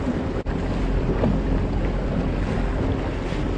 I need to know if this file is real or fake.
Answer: real